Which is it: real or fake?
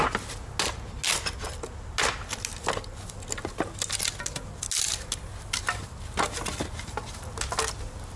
real